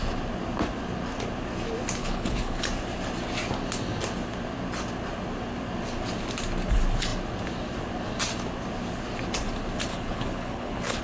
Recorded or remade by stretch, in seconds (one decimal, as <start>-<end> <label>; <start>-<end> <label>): 0.0-2.0 recorded; 2.0-2.6 remade; 2.6-9.9 recorded; 9.9-11.0 remade